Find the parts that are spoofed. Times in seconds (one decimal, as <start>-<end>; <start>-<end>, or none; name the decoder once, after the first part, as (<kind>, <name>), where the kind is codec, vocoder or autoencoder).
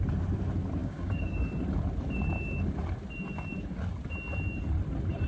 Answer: 0.8-1.4 (codec, DAC)